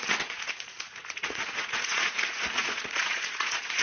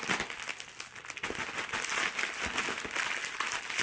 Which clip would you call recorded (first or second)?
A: second